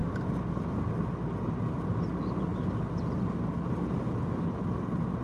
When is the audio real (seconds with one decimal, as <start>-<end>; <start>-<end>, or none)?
0.0-5.2